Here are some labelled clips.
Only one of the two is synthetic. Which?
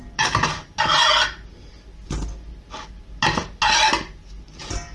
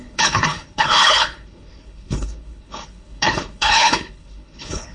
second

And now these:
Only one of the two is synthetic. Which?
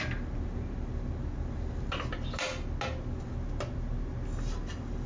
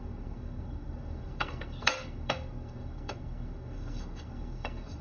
second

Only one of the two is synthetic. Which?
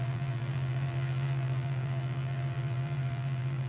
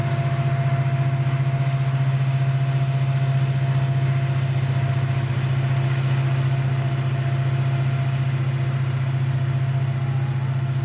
first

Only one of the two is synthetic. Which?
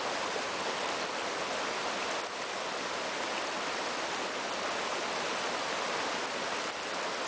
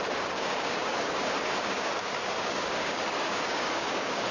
second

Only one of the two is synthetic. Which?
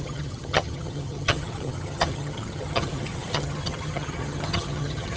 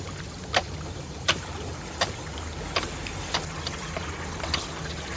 first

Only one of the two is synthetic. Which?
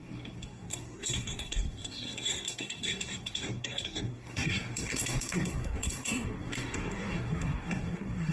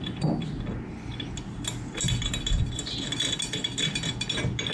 first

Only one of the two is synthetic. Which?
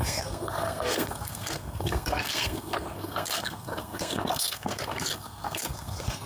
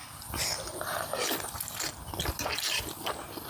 first